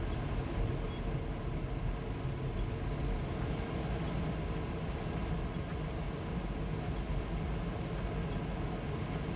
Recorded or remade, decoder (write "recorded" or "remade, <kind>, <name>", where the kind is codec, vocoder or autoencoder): recorded